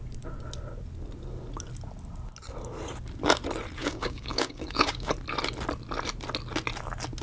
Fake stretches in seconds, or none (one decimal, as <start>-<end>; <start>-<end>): 3.8-5.1